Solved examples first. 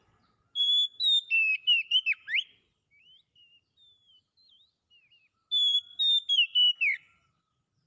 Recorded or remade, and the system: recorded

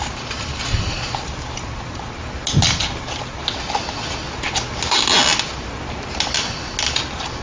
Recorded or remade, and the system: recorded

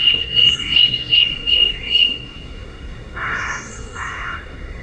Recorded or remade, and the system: remade, codec, SNAC